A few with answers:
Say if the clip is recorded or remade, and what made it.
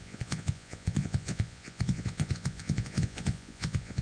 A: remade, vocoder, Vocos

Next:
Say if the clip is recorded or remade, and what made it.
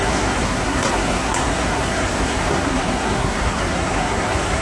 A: remade, codec, SNAC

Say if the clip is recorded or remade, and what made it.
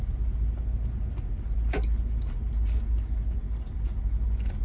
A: recorded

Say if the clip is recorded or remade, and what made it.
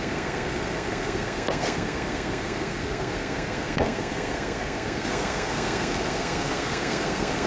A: remade, codec, SNAC